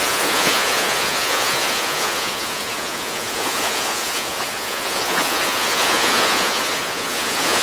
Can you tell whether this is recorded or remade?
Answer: remade